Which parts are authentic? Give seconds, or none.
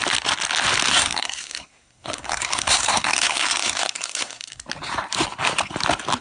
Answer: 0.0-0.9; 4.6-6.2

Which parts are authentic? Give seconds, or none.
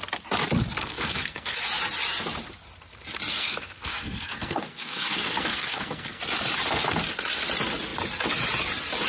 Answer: 0.0-0.8; 1.6-3.3; 6.2-9.1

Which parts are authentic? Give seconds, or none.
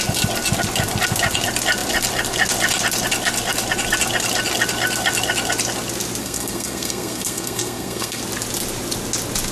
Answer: 0.0-6.2; 8.2-9.5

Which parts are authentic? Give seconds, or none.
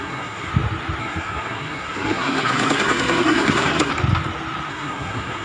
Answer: 0.5-1.0; 3.9-4.7